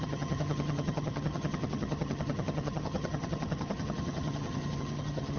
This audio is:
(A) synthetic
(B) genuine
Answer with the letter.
A